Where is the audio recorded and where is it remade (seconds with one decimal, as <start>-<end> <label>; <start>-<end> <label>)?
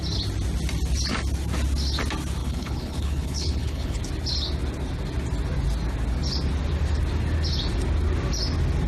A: 0.0-2.4 recorded; 2.4-4.0 remade; 4.0-8.9 recorded